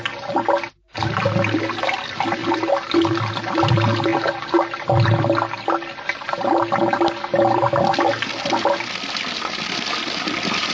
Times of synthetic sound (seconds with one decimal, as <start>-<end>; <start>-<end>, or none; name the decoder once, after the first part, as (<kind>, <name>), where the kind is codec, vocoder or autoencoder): none